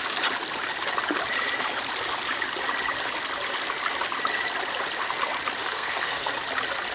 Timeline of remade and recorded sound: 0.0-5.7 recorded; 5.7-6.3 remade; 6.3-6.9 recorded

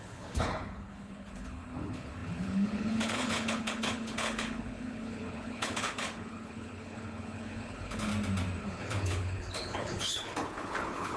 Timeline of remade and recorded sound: 0.0-8.1 remade; 8.1-8.6 recorded; 8.6-11.2 remade

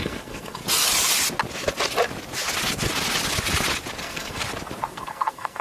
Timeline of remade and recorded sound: 0.0-0.6 remade; 0.6-4.0 recorded; 4.0-4.4 remade; 4.4-4.9 recorded; 4.9-5.6 remade

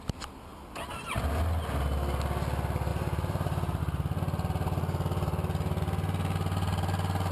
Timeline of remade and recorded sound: 0.0-2.9 recorded; 2.9-3.8 remade; 3.8-7.3 recorded

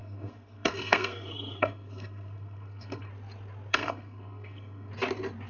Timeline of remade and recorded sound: 0.0-3.1 remade; 3.1-3.7 recorded; 3.7-4.9 remade; 4.9-5.5 recorded